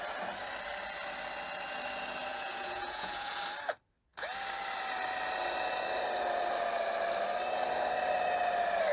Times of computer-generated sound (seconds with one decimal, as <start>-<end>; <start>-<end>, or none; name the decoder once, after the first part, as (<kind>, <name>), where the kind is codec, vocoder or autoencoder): 2.3-3.4 (vocoder, Vocos)